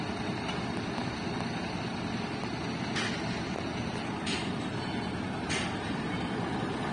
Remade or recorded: recorded